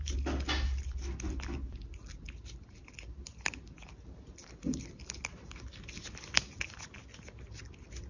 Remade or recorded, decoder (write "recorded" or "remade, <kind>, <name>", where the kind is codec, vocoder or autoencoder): recorded